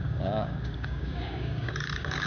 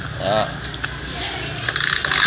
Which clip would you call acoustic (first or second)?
second